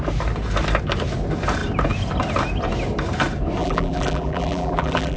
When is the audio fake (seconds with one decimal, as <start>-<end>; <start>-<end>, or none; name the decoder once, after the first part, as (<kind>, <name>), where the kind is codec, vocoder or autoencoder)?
3.6-5.2 (vocoder, BigVGAN v2)